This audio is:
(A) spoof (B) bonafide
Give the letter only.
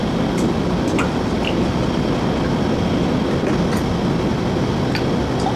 B